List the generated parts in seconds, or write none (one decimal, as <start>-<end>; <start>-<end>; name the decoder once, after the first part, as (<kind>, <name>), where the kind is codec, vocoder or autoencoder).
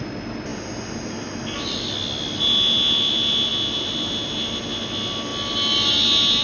none